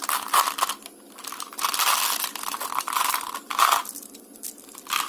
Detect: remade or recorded recorded